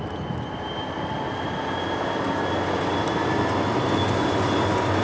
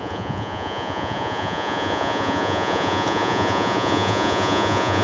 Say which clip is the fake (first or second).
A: second